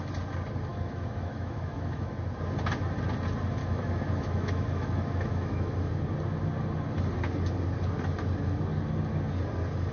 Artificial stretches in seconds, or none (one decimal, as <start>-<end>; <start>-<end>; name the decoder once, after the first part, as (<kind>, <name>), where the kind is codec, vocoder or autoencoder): 0.7-2.1 (autoencoder, DAC-VAE); 3.6-5.9